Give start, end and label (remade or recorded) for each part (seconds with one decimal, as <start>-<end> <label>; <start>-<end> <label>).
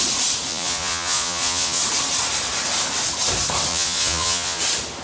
0.0-0.5 recorded; 0.5-1.8 remade; 1.8-3.7 recorded; 3.7-4.6 remade; 4.6-5.0 recorded